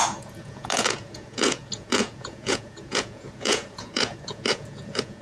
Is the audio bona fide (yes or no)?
no